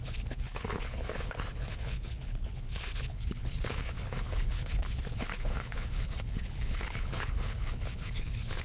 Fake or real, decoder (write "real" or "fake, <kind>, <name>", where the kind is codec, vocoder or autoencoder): fake, codec, HILCodec